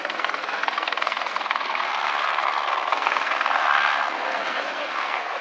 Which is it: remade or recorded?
remade